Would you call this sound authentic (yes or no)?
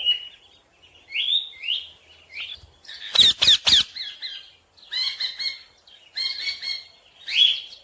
yes